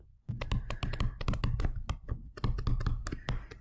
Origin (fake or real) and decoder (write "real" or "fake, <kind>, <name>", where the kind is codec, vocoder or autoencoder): real